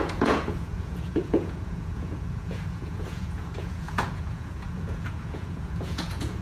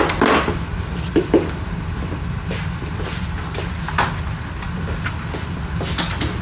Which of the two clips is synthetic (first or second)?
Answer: first